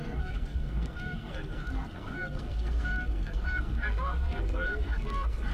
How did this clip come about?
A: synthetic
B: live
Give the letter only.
A